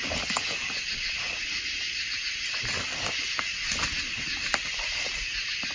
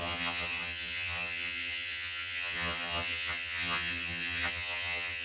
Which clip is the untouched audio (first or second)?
first